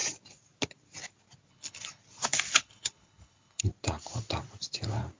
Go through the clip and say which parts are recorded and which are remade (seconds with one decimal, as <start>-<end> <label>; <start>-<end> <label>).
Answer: 0.0-1.5 recorded; 1.5-2.0 remade; 2.0-2.5 recorded; 2.5-3.7 remade; 3.7-5.2 recorded